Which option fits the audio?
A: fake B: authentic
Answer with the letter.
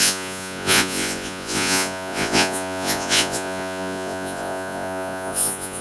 A